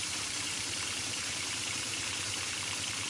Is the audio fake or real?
fake